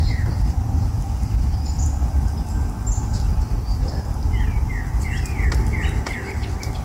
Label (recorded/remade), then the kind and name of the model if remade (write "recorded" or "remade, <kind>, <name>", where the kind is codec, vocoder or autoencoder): recorded